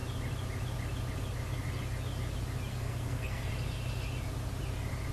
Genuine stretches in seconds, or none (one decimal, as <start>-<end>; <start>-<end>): 0.0-2.7; 3.5-5.1